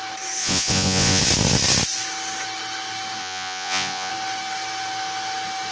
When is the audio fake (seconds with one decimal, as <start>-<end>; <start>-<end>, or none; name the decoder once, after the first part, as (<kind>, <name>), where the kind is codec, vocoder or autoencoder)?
0.4-1.2 (vocoder, Vocos); 3.2-4.1